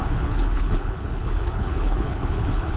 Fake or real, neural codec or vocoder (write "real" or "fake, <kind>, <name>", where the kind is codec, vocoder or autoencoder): fake, codec, HILCodec